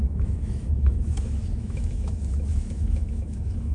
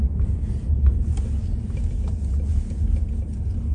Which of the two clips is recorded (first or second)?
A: second